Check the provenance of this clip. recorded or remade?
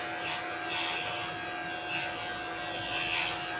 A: recorded